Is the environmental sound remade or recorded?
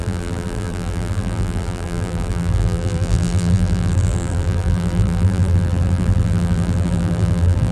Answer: remade